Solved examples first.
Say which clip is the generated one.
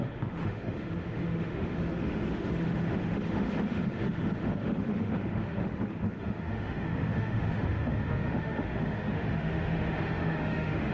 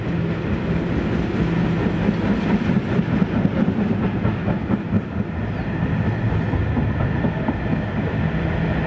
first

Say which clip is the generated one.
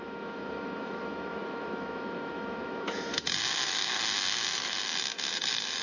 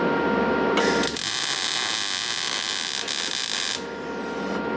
first